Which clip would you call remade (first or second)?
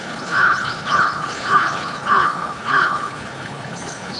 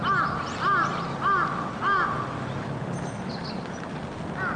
first